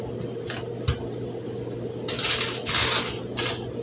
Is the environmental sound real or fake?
real